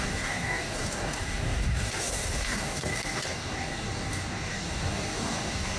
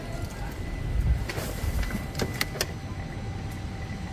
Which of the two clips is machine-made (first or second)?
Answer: first